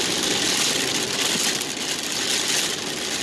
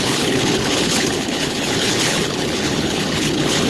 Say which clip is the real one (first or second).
first